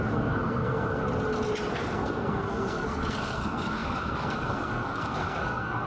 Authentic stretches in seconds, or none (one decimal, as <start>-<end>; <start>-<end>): 1.0-1.7